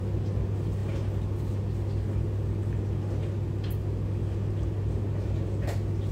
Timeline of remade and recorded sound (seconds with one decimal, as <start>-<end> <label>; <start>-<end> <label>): 0.0-6.1 recorded